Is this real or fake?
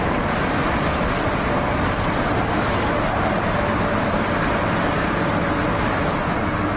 real